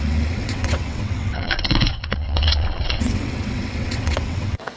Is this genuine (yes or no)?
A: no